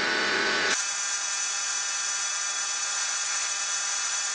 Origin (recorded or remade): remade